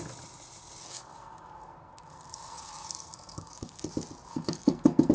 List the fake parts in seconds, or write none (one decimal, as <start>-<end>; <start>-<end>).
0.8-3.9; 4.3-5.1